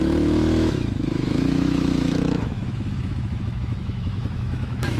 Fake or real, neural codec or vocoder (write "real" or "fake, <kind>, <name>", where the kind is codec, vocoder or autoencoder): fake, autoencoder, DAC-VAE